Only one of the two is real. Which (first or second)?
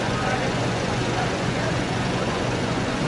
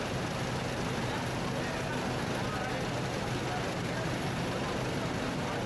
second